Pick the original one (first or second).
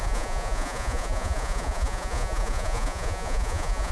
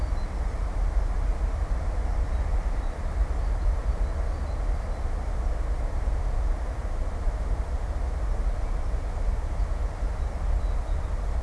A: second